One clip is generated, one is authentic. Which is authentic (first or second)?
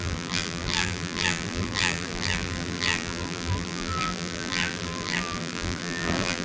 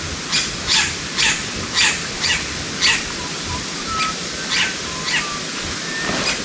second